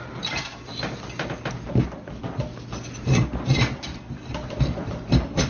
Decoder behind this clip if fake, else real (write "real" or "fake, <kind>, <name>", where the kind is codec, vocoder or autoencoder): real